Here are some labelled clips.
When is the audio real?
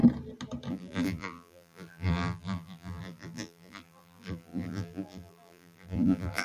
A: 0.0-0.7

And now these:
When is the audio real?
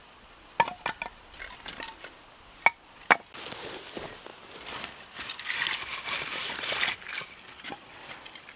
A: 0.0-4.3; 5.5-8.6